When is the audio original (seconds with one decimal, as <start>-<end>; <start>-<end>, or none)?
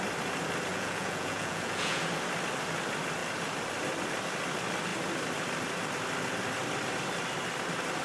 0.0-0.7; 2.0-8.0